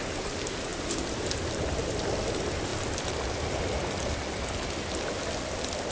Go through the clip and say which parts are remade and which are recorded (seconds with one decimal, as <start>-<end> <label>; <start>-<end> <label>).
0.0-0.7 recorded; 0.7-2.1 remade; 2.1-2.7 recorded; 2.7-3.3 remade; 3.3-5.9 recorded